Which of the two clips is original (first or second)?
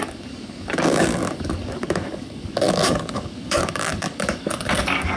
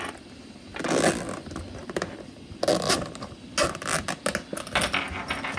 second